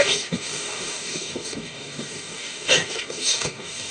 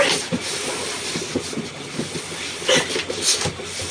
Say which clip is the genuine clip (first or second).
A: second